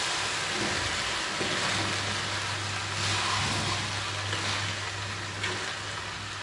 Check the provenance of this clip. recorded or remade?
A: recorded